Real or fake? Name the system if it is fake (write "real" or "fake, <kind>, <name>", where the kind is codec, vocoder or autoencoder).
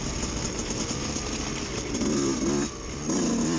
real